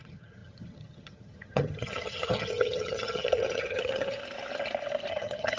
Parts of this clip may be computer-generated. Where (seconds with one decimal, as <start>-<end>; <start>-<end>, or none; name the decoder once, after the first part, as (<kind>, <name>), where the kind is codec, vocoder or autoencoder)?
0.0-4.2 (vocoder, HiFi-GAN); 5.1-5.6